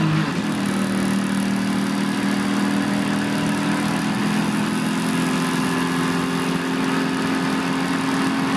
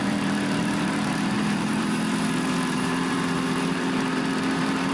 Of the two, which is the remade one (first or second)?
second